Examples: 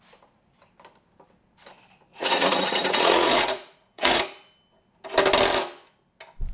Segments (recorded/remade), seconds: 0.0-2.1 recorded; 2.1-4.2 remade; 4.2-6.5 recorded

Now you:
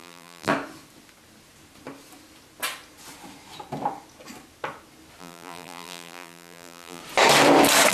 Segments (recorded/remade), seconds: 0.0-0.5 remade; 0.5-5.2 recorded; 5.2-7.0 remade; 7.0-7.9 recorded

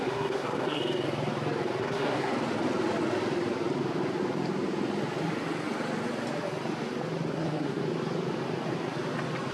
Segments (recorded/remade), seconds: 0.0-0.8 remade; 0.8-1.8 recorded; 1.8-2.3 remade; 2.3-7.3 recorded; 7.3-7.8 remade; 7.8-9.5 recorded

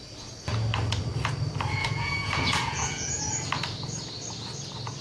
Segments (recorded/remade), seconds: 0.0-1.8 recorded; 1.8-3.2 remade; 3.2-5.0 recorded

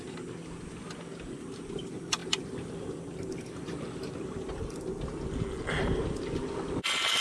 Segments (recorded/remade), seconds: 0.0-7.2 recorded

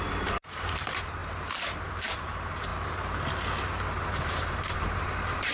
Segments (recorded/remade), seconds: 0.0-1.2 remade; 1.2-1.9 recorded; 1.9-2.7 remade; 2.7-4.2 recorded; 4.2-5.5 remade